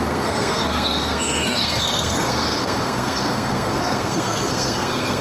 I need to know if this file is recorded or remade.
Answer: remade